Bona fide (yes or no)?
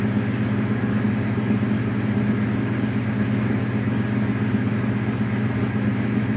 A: yes